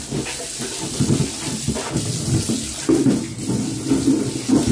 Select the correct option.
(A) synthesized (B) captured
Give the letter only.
B